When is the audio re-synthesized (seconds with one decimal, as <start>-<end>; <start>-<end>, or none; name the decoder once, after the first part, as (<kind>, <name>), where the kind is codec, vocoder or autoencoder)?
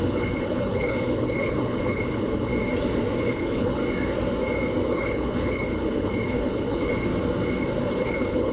0.0-2.5 (codec, HILCodec); 3.2-3.8; 4.9-6.9; 7.8-8.5